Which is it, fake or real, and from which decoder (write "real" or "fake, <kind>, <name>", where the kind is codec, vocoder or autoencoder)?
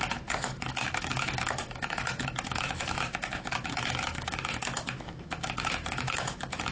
fake, autoencoder, DAC-VAE